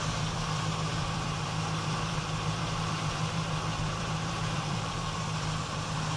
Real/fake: fake